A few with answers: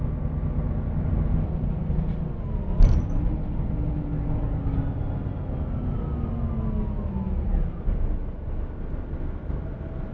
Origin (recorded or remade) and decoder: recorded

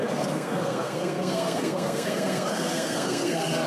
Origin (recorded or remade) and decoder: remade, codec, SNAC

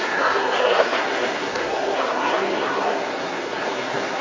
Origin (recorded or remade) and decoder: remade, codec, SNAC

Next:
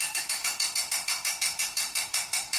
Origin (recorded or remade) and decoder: remade, autoencoder, DAC-VAE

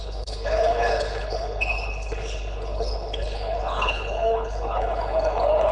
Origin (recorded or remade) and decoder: remade, codec, HILCodec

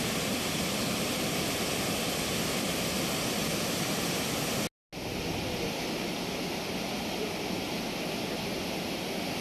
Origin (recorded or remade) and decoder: recorded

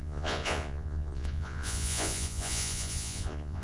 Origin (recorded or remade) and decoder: remade, vocoder, Vocos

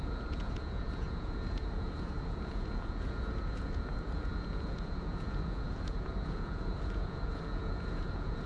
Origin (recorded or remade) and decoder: remade, vocoder, Vocos